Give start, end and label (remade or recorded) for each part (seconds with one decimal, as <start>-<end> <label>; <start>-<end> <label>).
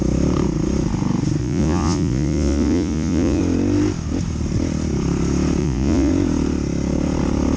0.0-1.4 recorded; 1.4-3.4 remade; 3.4-5.6 recorded; 5.6-6.1 remade; 6.1-7.6 recorded